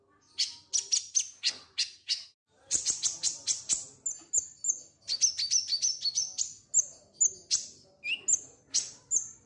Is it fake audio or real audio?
real